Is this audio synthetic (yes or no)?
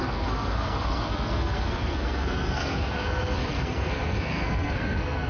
yes